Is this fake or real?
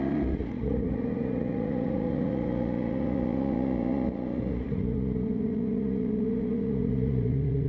fake